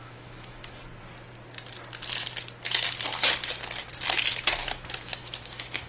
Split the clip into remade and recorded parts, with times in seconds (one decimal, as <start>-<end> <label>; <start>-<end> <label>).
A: 0.0-0.8 remade; 0.8-4.3 recorded; 4.3-5.9 remade